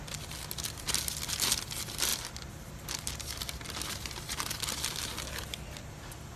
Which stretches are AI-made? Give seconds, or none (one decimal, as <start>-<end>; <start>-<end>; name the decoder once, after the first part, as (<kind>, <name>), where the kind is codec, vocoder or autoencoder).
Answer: none